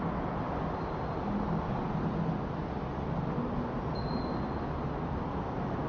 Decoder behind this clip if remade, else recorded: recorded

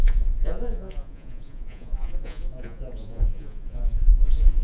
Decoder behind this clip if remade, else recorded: remade, vocoder, Vocos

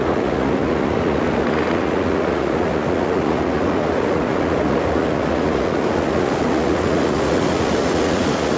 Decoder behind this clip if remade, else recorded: remade, vocoder, Vocos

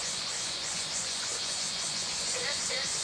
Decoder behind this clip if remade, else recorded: remade, vocoder, Vocos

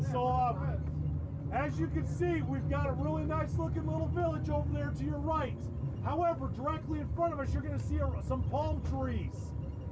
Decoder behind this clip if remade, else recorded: recorded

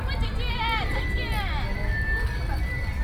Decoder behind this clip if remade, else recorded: recorded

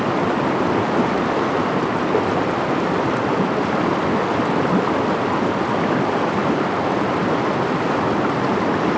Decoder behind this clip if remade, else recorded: recorded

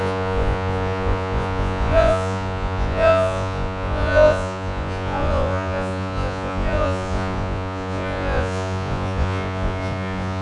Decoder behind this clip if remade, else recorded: remade, vocoder, Vocos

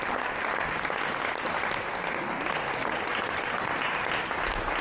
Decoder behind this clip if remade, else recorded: recorded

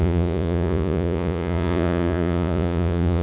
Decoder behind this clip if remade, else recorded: remade, vocoder, Vocos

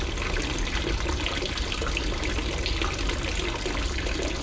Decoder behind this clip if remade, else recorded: recorded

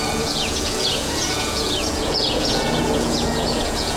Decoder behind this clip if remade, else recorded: remade, vocoder, Vocos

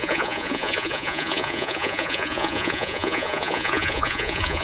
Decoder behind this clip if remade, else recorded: remade, vocoder, Vocos